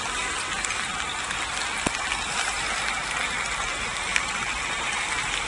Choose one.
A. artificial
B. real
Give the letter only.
B